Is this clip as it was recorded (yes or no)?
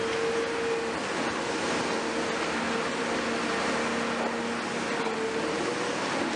yes